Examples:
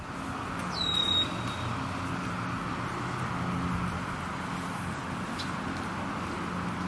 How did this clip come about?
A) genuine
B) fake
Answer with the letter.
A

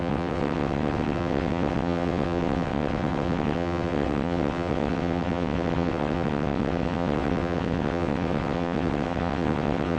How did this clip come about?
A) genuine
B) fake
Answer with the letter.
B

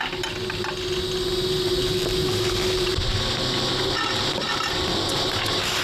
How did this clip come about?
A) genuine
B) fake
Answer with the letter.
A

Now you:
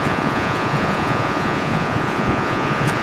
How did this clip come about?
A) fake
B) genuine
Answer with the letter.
A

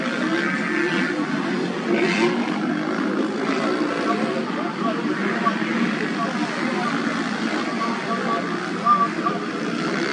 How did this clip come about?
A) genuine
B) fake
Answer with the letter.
A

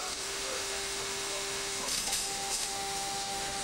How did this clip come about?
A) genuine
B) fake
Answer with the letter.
B